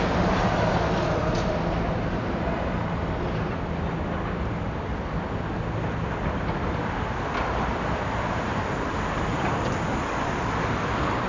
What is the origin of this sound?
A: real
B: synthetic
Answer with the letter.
A